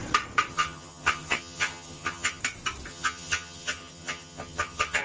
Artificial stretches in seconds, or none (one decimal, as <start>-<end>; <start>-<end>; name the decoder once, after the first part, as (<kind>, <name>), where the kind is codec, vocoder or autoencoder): 0.5-2.4 (vocoder, HiFi-GAN); 2.9-5.0